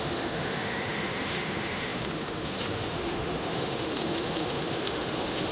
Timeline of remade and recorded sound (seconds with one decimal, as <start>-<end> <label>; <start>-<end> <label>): 0.0-5.5 remade